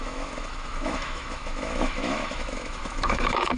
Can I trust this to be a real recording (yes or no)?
no